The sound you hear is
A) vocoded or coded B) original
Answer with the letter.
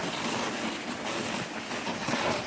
B